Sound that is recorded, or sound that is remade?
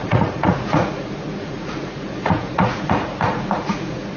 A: remade